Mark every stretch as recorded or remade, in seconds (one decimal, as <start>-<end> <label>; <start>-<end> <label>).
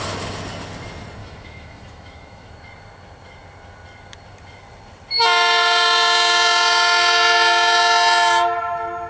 0.0-1.2 recorded; 1.2-2.5 remade; 2.5-9.1 recorded